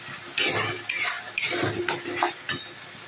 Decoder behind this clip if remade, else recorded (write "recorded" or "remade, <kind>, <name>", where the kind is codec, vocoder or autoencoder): recorded